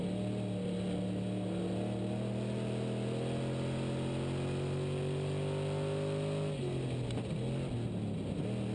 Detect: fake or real real